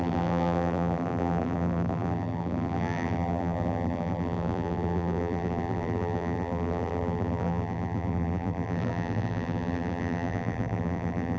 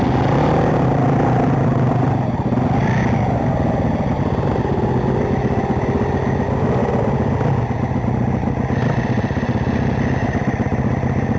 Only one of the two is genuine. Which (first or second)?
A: second